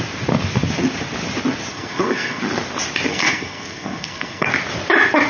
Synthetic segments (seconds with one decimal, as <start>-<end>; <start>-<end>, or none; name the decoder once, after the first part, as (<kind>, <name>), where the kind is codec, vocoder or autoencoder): 1.7-2.4 (codec, SNAC); 3.1-4.5